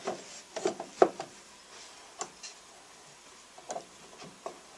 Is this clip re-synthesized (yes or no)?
no